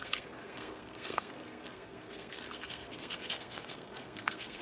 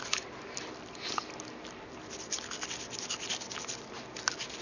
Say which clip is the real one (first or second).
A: second